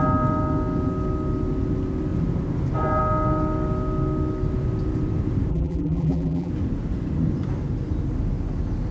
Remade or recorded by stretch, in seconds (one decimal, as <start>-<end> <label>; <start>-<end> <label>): 0.0-5.5 recorded; 5.5-6.5 remade; 6.5-8.9 recorded